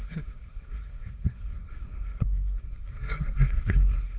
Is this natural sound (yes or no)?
no